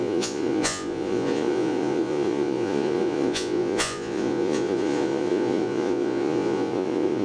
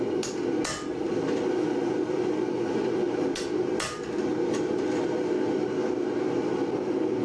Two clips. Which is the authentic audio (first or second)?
second